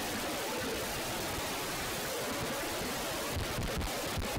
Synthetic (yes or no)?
no